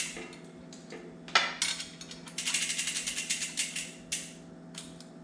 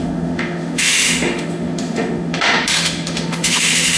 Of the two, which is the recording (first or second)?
first